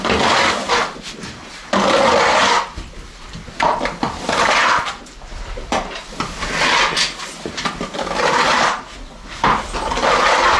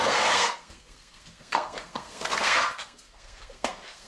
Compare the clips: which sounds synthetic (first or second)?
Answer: second